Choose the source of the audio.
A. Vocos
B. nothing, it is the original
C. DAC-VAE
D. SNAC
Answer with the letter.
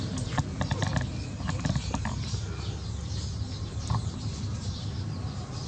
B